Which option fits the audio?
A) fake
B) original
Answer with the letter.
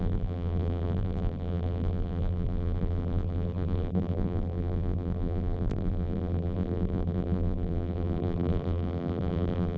A